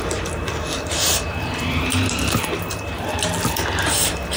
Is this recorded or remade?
remade